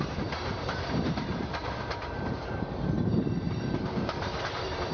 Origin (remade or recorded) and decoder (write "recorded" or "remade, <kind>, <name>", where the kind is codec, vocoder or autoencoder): remade, vocoder, BigVGAN v2